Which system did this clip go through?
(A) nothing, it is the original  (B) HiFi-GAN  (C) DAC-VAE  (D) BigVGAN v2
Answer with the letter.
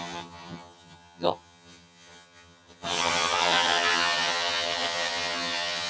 B